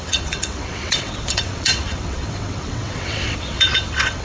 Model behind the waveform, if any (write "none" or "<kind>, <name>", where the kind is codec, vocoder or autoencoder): vocoder, WaveNeXt